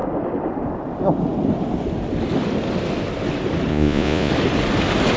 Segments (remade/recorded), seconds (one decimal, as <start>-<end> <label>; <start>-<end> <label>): 0.0-3.7 recorded; 3.7-4.3 remade; 4.3-5.2 recorded